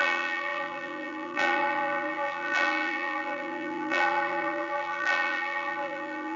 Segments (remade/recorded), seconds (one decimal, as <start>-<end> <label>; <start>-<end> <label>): 0.0-6.4 remade